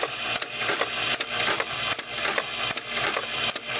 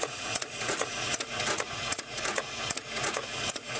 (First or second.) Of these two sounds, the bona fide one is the first